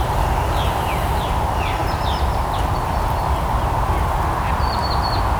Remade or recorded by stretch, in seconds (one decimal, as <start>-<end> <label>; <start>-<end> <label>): 0.0-5.4 recorded